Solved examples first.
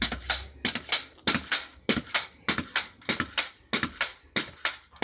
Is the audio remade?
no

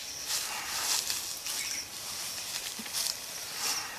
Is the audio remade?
no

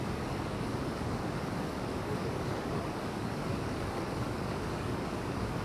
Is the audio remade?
yes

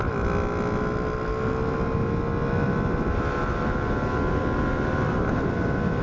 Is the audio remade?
no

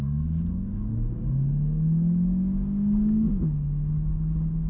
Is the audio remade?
yes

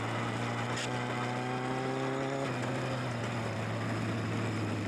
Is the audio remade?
no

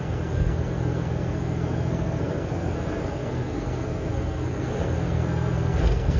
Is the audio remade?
yes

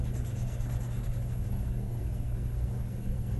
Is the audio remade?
yes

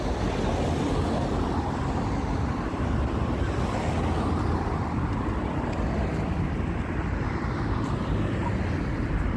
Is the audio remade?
no